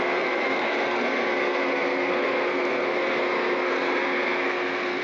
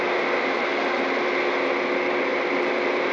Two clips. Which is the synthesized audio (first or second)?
first